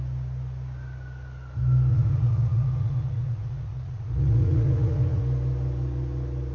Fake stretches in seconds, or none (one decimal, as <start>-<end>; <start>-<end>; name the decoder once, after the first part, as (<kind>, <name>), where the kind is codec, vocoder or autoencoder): 1.9-5.2 (vocoder, Vocos)